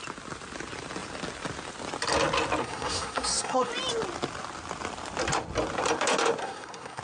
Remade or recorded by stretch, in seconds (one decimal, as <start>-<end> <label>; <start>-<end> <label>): 0.0-2.6 recorded; 2.6-3.7 remade; 3.7-6.4 recorded; 6.4-7.0 remade